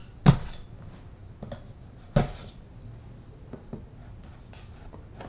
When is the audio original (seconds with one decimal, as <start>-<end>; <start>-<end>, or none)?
0.0-5.3